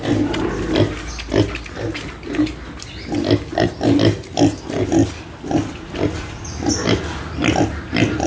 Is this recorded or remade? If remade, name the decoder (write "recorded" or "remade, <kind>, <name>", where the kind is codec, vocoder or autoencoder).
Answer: recorded